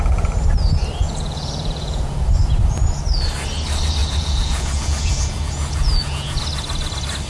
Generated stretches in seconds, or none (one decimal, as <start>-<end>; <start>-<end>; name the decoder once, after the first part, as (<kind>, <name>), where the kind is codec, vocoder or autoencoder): 1.0-2.2 (vocoder, Vocos); 4.0-6.4